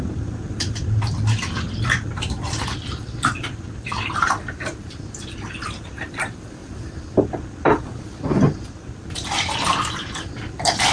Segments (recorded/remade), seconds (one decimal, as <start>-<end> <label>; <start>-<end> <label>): 0.0-10.9 recorded